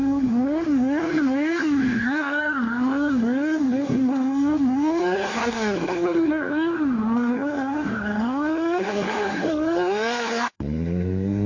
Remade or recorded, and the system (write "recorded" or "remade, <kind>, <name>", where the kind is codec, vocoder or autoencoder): remade, codec, SNAC